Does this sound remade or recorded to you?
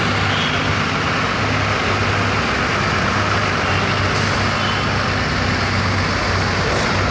recorded